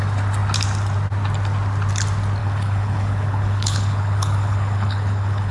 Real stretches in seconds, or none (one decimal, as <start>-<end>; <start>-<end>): 0.0-2.4